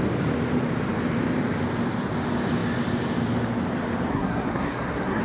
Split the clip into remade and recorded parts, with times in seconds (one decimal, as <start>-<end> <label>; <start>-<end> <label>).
0.0-4.1 recorded; 4.1-5.2 remade